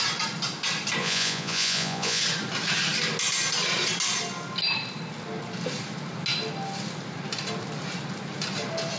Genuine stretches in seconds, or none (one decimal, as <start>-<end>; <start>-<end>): 0.0-1.0; 2.2-9.0

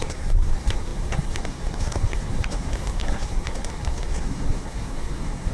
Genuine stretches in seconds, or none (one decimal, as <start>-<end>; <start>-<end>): none

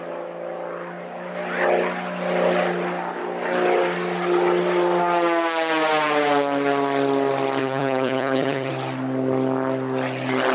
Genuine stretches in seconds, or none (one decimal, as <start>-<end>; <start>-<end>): 0.0-7.6; 8.7-10.5

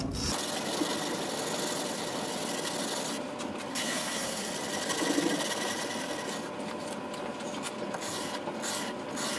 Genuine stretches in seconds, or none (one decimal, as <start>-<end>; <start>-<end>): 0.0-3.7; 4.5-9.4

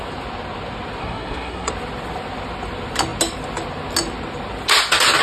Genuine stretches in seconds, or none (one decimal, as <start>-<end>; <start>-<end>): 0.0-1.0; 1.7-5.2

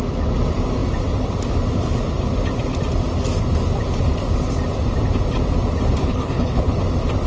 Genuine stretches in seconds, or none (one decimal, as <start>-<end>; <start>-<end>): 0.0-6.0; 6.7-7.3

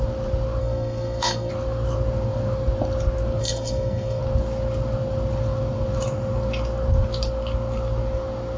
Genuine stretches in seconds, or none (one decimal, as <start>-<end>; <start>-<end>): 0.0-0.6; 1.5-3.4; 4.2-8.6

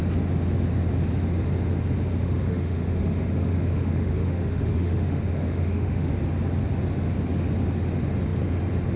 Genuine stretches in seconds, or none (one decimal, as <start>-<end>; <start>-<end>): 0.0-2.1; 6.1-9.0